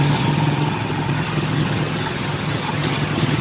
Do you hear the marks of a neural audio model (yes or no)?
yes